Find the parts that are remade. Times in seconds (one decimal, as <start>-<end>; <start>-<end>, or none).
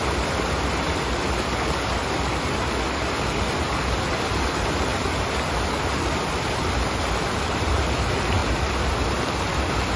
none